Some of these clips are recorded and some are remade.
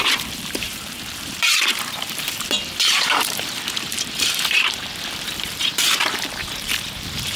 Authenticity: remade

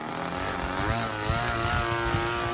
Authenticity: recorded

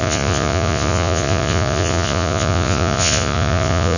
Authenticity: remade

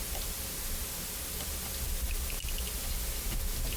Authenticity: recorded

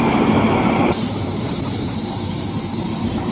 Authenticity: remade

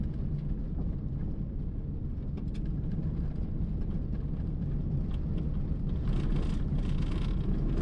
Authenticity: recorded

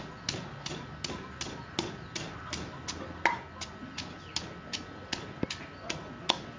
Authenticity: recorded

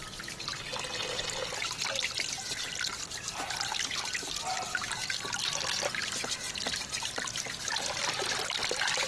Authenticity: recorded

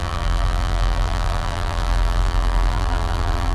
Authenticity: remade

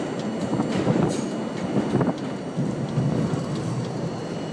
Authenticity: recorded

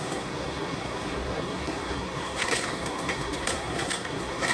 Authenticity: remade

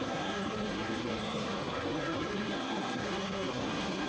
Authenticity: remade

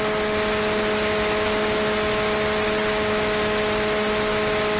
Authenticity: recorded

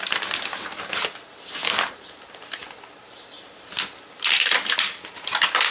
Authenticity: remade